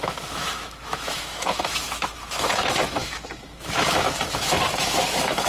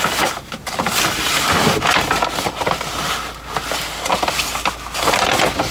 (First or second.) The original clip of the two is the second